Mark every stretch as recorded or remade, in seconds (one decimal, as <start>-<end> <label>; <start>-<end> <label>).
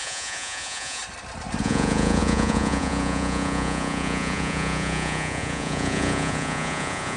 0.0-1.0 remade; 1.0-1.6 recorded; 1.6-7.2 remade